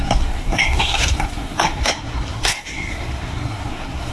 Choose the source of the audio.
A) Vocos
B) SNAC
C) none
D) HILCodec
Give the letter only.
B